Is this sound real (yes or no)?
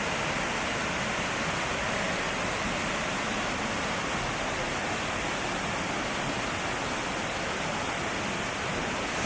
yes